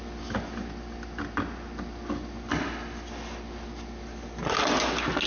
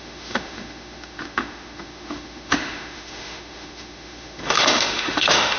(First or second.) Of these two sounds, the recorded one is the first